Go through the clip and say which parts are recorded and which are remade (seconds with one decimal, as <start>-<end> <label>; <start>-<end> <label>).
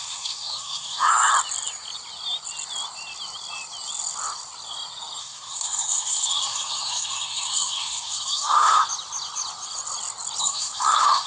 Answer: 0.0-1.3 remade; 1.3-5.2 recorded; 5.2-8.8 remade; 8.8-10.4 recorded; 10.4-11.3 remade